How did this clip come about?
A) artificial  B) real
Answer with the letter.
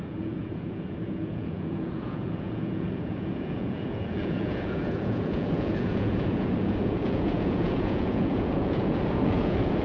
A